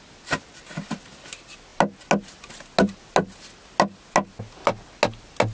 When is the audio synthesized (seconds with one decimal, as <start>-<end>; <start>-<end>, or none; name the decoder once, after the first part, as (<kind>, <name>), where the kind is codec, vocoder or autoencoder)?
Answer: none